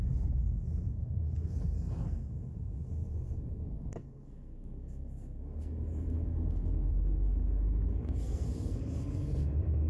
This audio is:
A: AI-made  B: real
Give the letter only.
A